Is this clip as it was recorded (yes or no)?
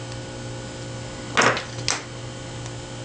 yes